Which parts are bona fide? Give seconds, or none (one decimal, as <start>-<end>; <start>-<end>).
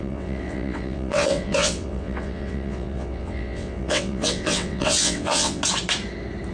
5.6-6.5